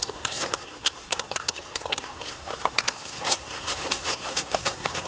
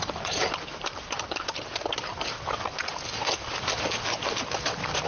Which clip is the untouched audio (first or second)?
second